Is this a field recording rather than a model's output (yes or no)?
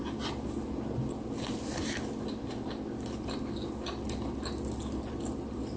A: yes